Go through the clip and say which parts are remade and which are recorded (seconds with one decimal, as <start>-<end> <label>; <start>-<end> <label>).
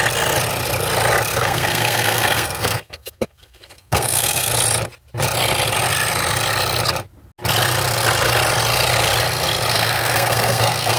0.0-1.3 recorded; 1.3-4.5 remade; 4.5-9.7 recorded; 9.7-11.0 remade